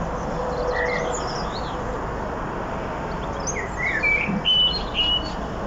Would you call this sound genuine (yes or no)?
yes